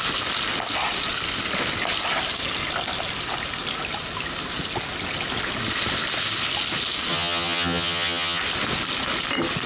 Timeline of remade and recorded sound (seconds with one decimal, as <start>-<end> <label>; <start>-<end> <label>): 0.0-7.1 recorded; 7.1-8.4 remade; 8.4-9.7 recorded

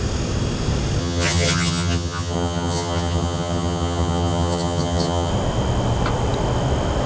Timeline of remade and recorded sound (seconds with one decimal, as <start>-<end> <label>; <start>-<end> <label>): 0.0-1.0 recorded; 1.0-5.3 remade; 5.3-7.1 recorded

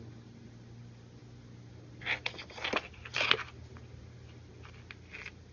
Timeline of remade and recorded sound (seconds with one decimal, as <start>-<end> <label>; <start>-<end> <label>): 0.0-5.5 recorded

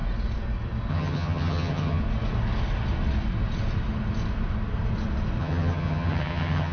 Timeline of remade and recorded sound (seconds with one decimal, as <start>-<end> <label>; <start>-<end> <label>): 0.0-0.9 recorded; 0.9-2.0 remade; 2.0-5.4 recorded; 5.4-6.7 remade